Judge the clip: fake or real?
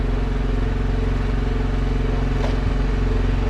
real